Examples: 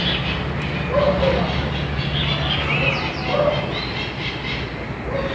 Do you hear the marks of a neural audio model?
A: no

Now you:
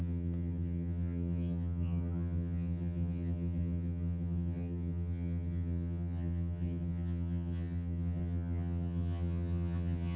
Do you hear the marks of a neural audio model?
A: yes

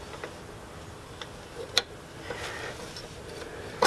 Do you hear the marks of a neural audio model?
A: no